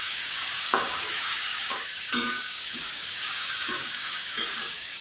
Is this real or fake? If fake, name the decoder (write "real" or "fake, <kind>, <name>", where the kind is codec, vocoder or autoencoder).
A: fake, codec, DAC